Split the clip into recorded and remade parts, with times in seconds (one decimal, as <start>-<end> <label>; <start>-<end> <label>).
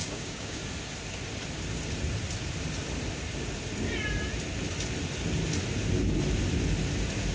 0.0-0.6 remade; 0.6-7.3 recorded